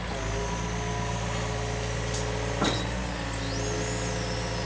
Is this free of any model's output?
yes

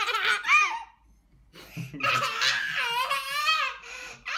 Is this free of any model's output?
yes